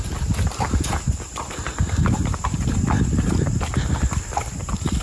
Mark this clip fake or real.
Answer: real